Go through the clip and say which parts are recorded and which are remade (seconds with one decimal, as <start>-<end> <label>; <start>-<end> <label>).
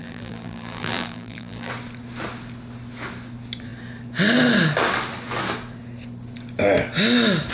0.0-1.7 remade; 1.7-7.5 recorded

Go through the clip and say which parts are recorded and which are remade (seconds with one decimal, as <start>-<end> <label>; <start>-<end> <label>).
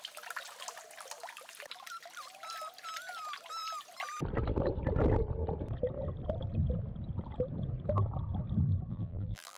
0.0-8.9 recorded; 8.9-9.6 remade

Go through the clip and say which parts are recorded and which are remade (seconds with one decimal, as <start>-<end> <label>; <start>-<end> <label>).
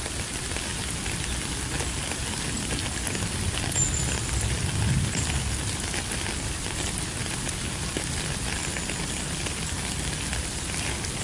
0.0-11.2 recorded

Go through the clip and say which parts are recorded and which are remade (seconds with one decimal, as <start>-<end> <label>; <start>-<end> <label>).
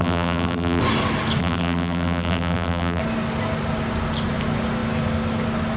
0.0-0.8 remade; 0.8-1.4 recorded; 1.4-3.0 remade; 3.0-5.8 recorded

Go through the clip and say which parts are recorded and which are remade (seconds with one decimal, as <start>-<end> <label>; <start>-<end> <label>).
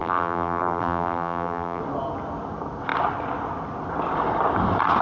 0.0-1.8 remade; 1.8-5.0 recorded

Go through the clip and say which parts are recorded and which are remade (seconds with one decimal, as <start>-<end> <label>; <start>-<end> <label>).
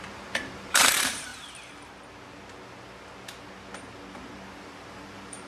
0.0-1.3 remade; 1.3-4.6 recorded; 4.6-5.5 remade